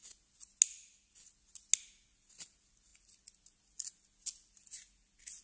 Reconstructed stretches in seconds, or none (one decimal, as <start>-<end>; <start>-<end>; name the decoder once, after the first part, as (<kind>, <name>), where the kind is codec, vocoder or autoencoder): none